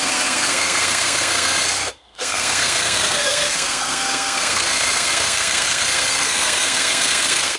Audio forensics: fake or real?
fake